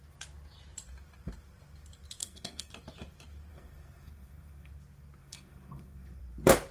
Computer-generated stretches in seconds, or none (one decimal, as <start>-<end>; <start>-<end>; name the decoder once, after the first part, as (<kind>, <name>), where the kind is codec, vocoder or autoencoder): 2.2-2.7 (codec, SNAC); 3.5-4.7; 5.2-6.2